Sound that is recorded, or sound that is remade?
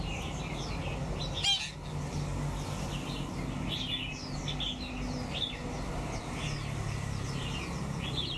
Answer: recorded